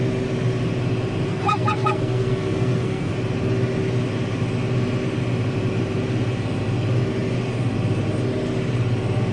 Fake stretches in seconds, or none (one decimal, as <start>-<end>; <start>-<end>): 1.3-3.1